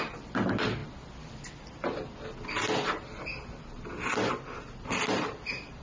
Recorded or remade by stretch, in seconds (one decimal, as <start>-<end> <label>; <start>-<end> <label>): 0.0-5.8 recorded